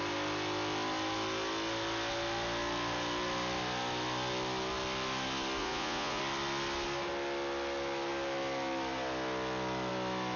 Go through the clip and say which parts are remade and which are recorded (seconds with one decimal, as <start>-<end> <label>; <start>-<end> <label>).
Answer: 0.0-5.6 recorded; 5.6-6.2 remade; 6.2-10.4 recorded